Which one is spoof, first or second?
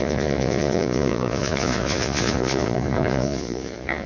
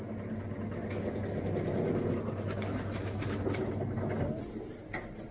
first